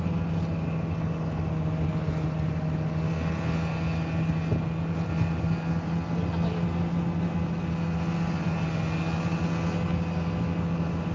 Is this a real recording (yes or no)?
yes